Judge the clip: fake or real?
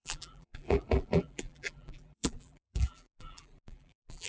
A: fake